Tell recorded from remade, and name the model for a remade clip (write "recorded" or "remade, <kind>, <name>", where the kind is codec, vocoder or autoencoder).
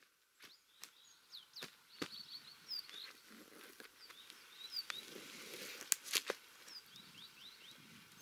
recorded